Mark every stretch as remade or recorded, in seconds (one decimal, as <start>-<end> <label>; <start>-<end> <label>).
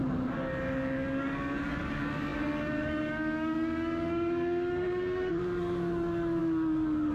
0.0-7.1 remade